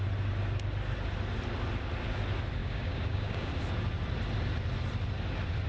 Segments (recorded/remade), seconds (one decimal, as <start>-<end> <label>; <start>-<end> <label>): 0.0-2.6 recorded; 2.6-3.5 remade; 3.5-5.7 recorded